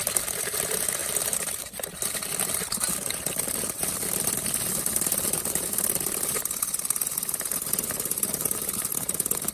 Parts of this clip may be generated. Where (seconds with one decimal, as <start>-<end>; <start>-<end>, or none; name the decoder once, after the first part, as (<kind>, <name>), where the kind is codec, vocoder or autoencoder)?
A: none